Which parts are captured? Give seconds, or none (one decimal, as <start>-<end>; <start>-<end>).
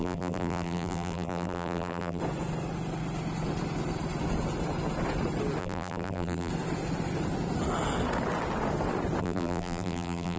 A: 2.2-5.6; 6.5-9.2